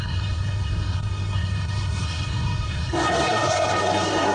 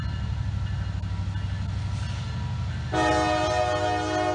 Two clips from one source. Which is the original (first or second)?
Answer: second